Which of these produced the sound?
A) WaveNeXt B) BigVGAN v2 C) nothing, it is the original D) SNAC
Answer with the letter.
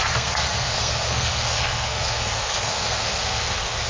D